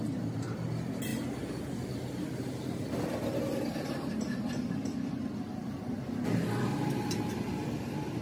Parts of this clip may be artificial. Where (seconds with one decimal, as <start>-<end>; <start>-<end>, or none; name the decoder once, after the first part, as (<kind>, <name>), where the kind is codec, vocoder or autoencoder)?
none